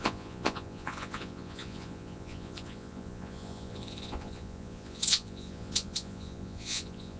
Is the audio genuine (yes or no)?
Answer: no